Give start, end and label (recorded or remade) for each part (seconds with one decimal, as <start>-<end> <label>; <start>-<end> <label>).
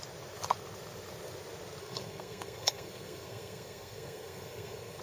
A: 0.0-1.8 recorded; 1.8-5.0 remade